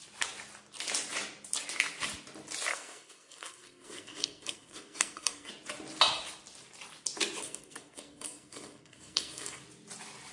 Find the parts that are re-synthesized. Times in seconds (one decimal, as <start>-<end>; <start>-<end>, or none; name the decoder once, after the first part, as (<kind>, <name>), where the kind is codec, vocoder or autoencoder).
2.7-5.5 (codec, SNAC); 7.4-9.6

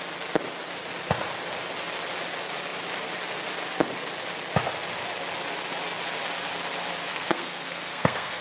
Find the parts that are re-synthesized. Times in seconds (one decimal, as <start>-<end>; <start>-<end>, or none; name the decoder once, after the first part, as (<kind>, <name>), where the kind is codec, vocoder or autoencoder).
7.1-8.4 (codec, SNAC)